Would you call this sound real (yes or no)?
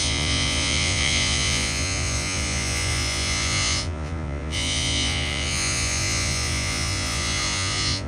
no